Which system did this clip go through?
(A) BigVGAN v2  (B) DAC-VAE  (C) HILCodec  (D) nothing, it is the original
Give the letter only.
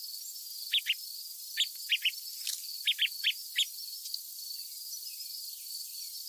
D